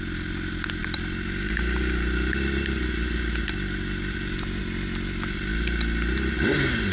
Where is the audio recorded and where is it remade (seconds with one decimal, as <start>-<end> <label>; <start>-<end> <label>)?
0.0-6.9 recorded